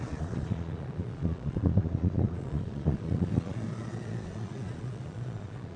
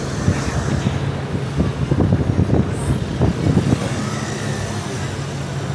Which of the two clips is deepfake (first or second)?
first